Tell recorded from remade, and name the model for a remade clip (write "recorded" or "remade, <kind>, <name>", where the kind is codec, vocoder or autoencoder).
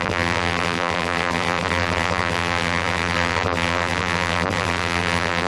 remade, vocoder, BigVGAN v2